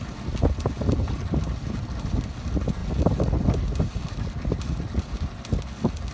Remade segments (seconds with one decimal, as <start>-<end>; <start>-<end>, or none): none